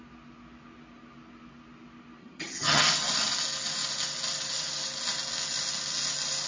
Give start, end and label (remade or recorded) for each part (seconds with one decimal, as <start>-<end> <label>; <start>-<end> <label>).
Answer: 0.0-2.2 recorded; 2.2-2.9 remade; 2.9-6.5 recorded